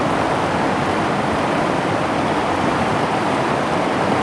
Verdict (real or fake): real